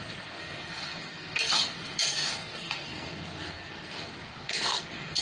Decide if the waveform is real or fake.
fake